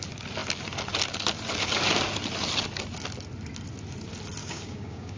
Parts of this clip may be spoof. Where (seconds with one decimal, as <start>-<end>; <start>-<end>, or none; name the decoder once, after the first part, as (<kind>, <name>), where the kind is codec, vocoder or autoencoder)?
4.4-5.2 (codec, DAC)